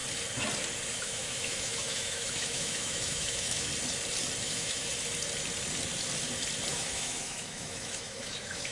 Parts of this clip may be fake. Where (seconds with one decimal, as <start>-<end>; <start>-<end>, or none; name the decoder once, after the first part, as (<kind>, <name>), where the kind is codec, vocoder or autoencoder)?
0.9-3.7 (autoencoder, DAC-VAE); 4.4-4.9; 6.7-8.7